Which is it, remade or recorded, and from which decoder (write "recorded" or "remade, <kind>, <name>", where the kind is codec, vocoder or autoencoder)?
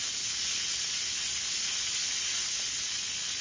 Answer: recorded